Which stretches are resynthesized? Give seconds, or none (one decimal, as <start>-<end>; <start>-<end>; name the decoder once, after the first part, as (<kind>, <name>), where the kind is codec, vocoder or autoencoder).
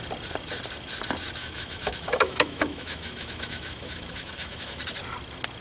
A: 1.4-4.8 (autoencoder, DAC-VAE)